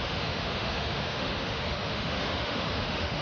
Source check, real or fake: fake